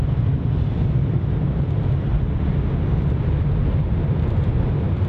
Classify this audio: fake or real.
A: real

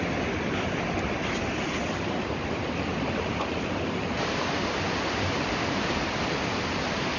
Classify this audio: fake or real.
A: real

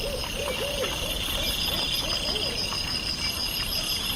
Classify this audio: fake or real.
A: real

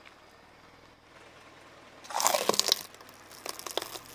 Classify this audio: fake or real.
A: real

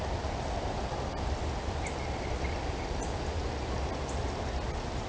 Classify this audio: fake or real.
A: real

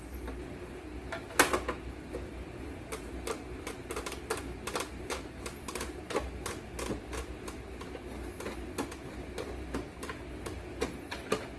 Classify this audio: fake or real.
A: real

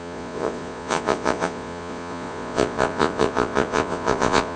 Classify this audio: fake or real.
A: fake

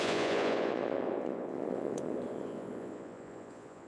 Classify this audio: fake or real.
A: fake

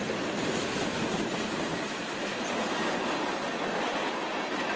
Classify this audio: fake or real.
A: real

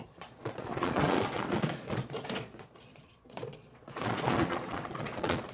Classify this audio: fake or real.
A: fake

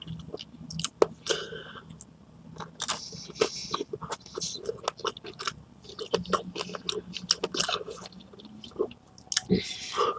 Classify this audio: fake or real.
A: real